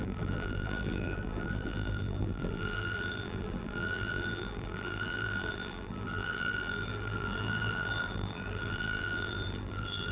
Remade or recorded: remade